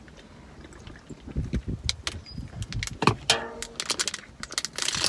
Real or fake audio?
real